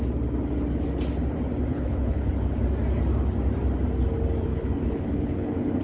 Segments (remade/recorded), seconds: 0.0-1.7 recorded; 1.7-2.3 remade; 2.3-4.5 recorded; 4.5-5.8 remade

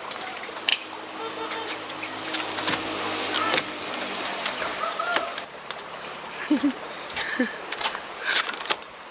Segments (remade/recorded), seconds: 0.0-0.7 remade; 0.7-4.2 recorded; 4.2-9.1 remade

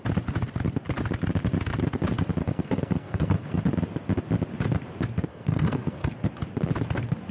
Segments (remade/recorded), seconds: 0.0-2.4 recorded; 2.4-3.6 remade; 3.6-5.3 recorded; 5.3-6.1 remade; 6.1-7.3 recorded

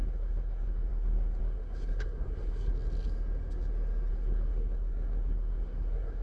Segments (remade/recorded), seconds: 0.0-2.7 remade; 2.7-4.1 recorded; 4.1-6.2 remade

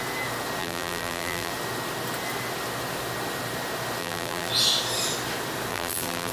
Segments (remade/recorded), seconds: 0.0-0.6 recorded; 0.6-1.5 remade; 1.5-4.0 recorded; 4.0-4.5 remade; 4.5-5.7 recorded; 5.7-6.3 remade

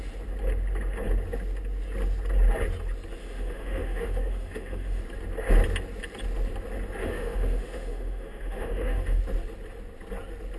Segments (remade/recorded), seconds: 0.0-3.2 recorded; 3.2-5.0 remade; 5.0-7.0 recorded; 7.0-9.2 remade; 9.2-10.6 recorded